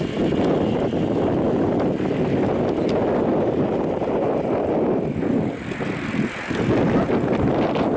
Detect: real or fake real